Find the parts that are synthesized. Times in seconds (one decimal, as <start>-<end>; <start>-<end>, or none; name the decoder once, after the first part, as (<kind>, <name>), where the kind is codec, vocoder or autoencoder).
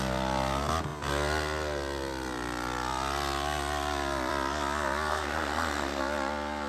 5.1-6.0 (codec, SNAC)